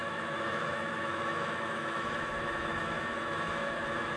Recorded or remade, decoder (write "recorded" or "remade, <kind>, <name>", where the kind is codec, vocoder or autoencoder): remade, autoencoder, DAC-VAE